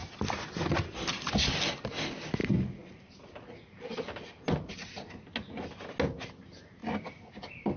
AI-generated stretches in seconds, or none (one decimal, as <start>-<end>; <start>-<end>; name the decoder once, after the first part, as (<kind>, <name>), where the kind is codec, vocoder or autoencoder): 2.4-4.7 (vocoder, BigVGAN v2)